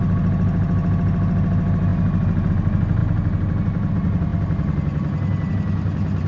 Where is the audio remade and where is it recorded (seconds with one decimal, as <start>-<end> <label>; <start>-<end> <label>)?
0.0-6.3 recorded

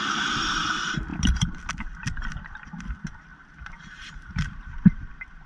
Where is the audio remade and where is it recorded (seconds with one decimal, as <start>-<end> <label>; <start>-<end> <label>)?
0.0-3.3 recorded; 3.3-5.1 remade; 5.1-5.5 recorded

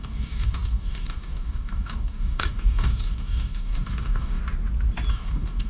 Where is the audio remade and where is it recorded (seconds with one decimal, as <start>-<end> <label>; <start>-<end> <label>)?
0.0-4.4 remade; 4.4-5.1 recorded; 5.1-5.7 remade

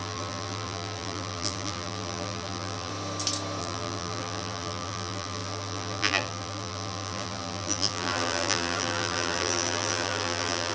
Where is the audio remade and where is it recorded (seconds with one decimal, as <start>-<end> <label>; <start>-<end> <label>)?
0.0-2.9 remade; 2.9-3.6 recorded; 3.6-10.7 remade

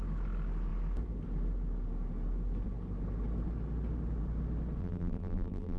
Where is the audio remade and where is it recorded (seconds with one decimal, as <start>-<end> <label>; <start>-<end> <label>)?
0.0-4.8 recorded; 4.8-5.8 remade

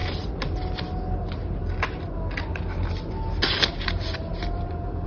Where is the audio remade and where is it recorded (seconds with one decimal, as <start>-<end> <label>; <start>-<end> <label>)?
0.0-3.7 recorded; 3.7-5.1 remade